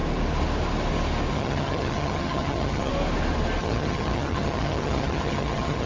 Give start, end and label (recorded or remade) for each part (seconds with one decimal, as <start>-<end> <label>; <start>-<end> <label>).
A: 0.0-1.3 recorded; 1.3-2.9 remade; 2.9-3.6 recorded; 3.6-5.9 remade